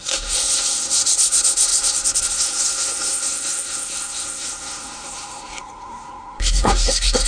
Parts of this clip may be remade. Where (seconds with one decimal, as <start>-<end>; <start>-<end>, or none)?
0.0-7.3